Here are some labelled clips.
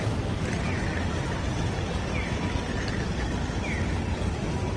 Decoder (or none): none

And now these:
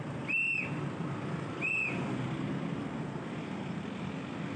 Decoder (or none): none